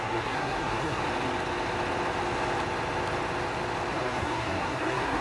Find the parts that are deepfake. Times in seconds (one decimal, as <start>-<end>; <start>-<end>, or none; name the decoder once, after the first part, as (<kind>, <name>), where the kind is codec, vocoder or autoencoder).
0.0-1.0 (codec, SNAC); 3.9-5.2